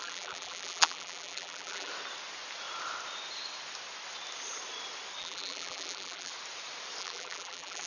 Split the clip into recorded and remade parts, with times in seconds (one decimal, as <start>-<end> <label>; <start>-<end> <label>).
0.0-1.9 remade; 1.9-5.2 recorded; 5.2-6.3 remade; 6.3-7.0 recorded; 7.0-7.9 remade